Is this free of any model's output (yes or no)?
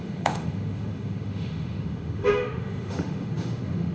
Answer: no